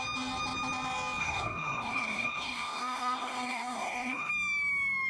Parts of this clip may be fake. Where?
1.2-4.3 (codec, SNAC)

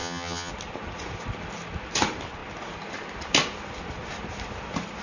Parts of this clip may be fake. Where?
0.0-0.5 (vocoder, HiFi-GAN)

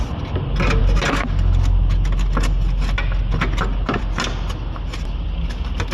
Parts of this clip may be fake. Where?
none

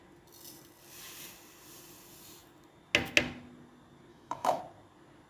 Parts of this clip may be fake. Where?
4.1-4.6 (autoencoder, DAC-VAE)

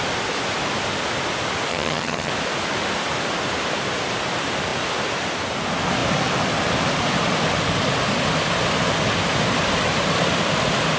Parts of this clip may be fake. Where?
1.7-2.3 (vocoder, HiFi-GAN)